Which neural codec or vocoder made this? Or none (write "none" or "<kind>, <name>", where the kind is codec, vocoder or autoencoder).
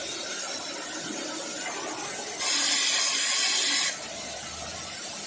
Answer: none